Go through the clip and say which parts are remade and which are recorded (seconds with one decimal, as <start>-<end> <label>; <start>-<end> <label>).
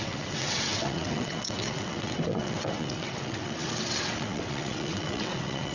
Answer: 0.0-5.7 remade